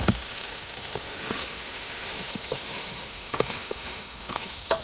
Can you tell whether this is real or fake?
fake